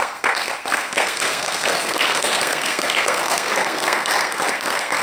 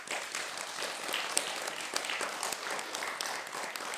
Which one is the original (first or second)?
second